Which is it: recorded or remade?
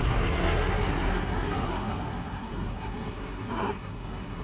remade